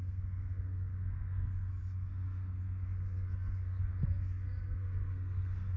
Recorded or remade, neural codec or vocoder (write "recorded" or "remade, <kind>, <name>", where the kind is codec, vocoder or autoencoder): remade, codec, SNAC